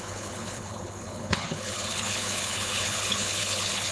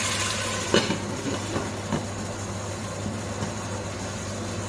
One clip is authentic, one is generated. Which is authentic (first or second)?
second